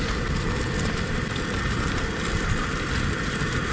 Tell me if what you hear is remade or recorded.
recorded